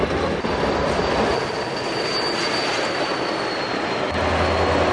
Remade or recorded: recorded